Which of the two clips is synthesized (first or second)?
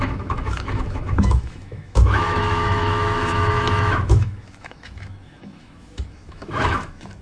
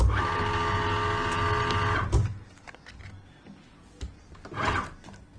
first